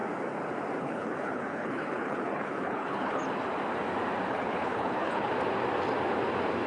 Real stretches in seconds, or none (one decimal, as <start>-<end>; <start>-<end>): 0.0-0.8; 3.2-4.3; 5.3-6.7